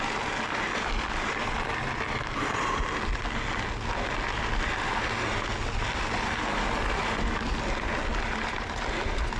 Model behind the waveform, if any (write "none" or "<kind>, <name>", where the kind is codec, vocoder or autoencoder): none